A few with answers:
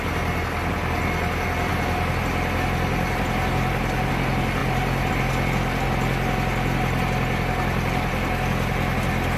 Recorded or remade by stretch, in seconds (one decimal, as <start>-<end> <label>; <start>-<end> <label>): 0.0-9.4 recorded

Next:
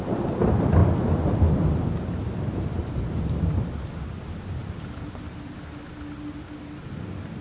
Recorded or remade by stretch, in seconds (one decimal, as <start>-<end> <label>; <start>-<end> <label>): 0.0-0.8 recorded; 0.8-3.8 remade; 3.8-7.4 recorded

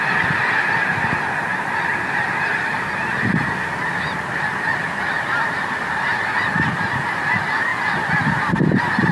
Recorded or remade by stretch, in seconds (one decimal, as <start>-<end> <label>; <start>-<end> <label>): 0.0-0.9 remade; 0.9-1.4 recorded; 1.4-2.7 remade; 2.7-5.7 recorded; 5.7-7.7 remade; 7.7-8.5 recorded; 8.5-9.1 remade